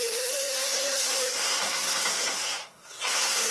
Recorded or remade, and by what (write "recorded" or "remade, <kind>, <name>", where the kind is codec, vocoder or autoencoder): remade, codec, SNAC